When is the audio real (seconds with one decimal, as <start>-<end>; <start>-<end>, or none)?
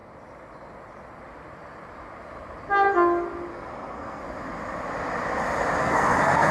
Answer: 0.0-3.5; 4.2-5.8